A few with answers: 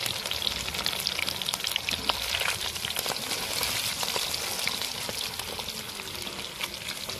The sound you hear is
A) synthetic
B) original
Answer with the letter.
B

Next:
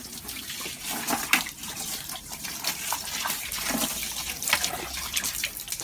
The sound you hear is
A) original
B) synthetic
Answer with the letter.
A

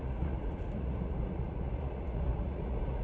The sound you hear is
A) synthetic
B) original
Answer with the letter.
A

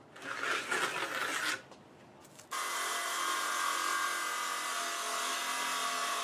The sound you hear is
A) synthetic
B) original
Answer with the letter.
B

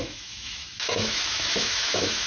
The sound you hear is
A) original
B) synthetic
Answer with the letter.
B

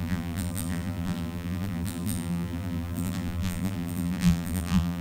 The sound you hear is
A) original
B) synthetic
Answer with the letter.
B